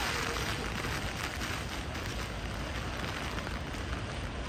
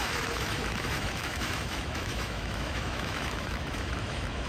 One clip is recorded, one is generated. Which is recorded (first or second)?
first